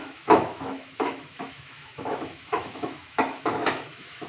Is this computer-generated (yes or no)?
yes